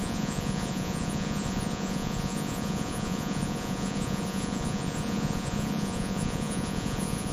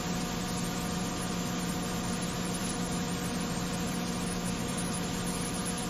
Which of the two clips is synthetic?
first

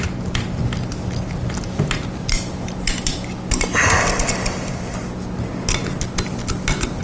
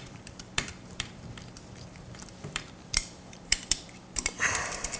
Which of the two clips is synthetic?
second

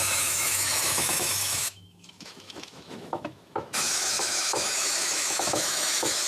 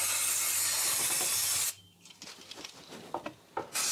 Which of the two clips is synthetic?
first